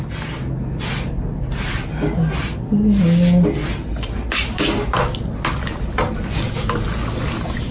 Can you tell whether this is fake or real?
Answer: real